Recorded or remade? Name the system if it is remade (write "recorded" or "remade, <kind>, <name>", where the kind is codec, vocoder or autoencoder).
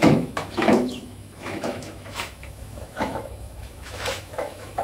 remade, autoencoder, DAC-VAE